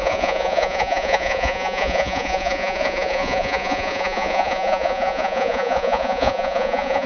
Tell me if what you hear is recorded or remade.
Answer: remade